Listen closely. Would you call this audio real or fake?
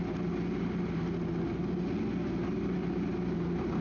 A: real